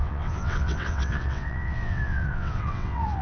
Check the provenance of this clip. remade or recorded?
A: remade